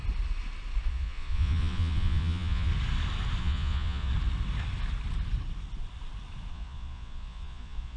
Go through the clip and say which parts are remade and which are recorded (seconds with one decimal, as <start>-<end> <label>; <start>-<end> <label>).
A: 0.0-0.9 recorded; 0.9-2.7 remade; 2.7-3.4 recorded; 3.4-4.1 remade; 4.1-6.5 recorded; 6.5-8.0 remade